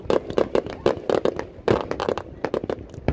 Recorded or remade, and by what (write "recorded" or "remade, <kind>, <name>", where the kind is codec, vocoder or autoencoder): remade, vocoder, BigVGAN v2